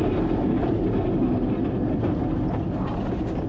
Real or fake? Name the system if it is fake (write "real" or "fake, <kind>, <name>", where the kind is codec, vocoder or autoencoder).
real